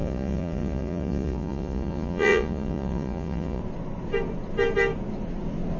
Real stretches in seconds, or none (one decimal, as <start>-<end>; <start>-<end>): 3.6-5.8